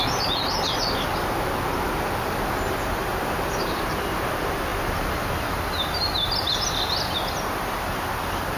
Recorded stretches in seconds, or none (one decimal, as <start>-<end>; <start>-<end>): 0.0-8.6